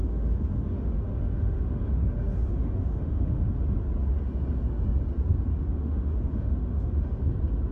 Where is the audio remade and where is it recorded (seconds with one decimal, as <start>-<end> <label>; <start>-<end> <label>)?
0.0-3.5 remade; 3.5-5.5 recorded; 5.5-7.1 remade; 7.1-7.7 recorded